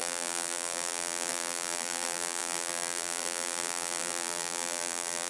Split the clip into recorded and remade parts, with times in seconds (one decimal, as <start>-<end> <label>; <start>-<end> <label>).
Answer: 0.0-5.3 remade